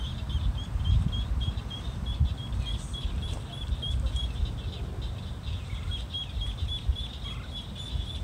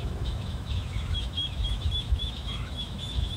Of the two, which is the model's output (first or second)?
second